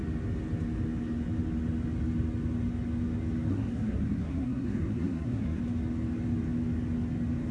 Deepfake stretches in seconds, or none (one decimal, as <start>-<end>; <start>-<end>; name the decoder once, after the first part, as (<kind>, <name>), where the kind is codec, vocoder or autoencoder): 3.5-5.6 (codec, SNAC)